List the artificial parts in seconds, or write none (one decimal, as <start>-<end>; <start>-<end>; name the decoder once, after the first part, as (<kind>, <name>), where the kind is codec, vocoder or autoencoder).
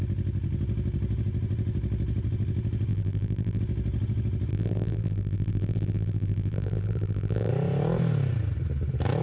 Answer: 2.9-3.6 (vocoder, BigVGAN v2); 4.5-7.5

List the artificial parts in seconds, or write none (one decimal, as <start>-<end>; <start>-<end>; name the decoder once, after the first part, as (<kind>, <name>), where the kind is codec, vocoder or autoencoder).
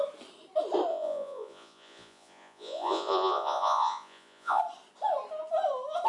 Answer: 0.9-4.6 (vocoder, Vocos)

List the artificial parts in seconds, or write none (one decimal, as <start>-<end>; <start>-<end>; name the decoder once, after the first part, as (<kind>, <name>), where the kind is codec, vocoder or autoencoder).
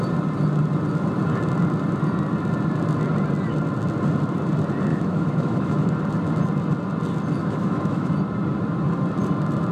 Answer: 4.9-5.9 (autoencoder, DAC-VAE); 7.4-8.1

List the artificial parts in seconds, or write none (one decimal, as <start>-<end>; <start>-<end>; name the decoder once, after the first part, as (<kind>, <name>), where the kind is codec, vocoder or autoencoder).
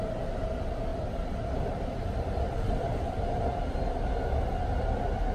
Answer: 0.9-4.1 (vocoder, BigVGAN v2)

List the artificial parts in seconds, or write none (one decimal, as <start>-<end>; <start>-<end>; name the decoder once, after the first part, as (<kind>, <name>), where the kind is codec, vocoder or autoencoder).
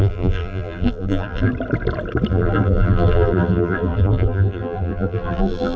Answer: 0.0-1.5 (vocoder, BigVGAN v2); 2.3-5.8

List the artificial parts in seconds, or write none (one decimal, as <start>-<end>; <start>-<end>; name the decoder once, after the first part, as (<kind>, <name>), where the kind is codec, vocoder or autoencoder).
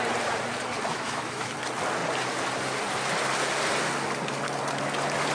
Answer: 0.9-1.5 (autoencoder, DAC-VAE)